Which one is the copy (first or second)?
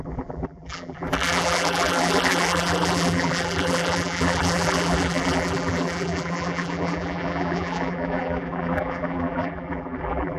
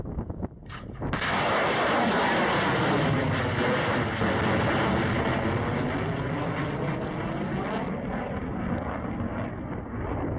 first